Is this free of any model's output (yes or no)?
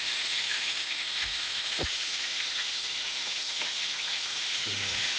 no